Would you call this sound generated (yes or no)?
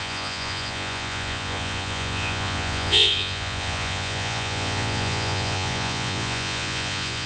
yes